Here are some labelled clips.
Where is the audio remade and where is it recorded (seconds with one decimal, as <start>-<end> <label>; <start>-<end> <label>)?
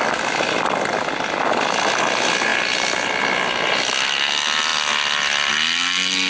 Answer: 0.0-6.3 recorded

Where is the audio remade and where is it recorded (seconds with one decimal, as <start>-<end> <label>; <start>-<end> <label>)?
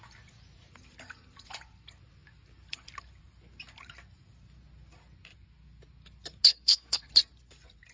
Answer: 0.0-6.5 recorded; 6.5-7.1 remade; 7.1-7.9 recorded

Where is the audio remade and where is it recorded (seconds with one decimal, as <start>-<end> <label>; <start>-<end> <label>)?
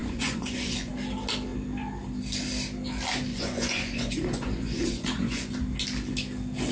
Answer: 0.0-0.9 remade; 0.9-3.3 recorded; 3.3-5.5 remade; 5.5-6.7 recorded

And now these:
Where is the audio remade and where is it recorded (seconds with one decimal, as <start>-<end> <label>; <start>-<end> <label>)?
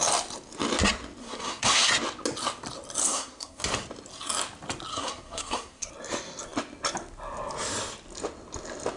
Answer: 0.0-1.2 recorded; 1.2-1.9 remade; 1.9-3.0 recorded; 3.0-3.6 remade; 3.6-4.9 recorded; 4.9-5.9 remade; 5.9-9.0 recorded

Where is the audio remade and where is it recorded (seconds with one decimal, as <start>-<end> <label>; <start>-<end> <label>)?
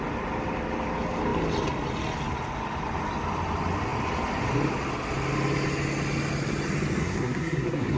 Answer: 0.0-7.0 recorded; 7.0-8.0 remade